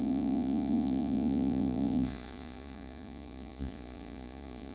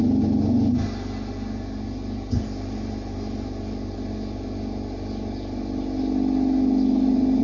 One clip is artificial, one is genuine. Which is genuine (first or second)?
second